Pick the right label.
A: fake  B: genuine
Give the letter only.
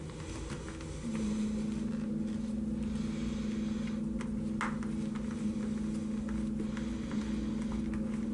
B